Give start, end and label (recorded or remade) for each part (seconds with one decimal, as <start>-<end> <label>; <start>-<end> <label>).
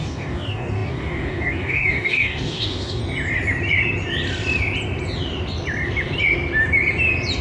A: 0.0-3.0 remade; 3.0-7.4 recorded